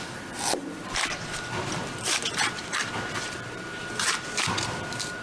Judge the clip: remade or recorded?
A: remade